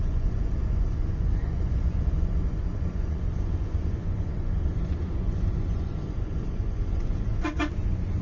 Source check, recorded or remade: remade